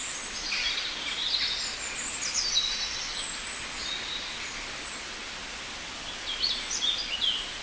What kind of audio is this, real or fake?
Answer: real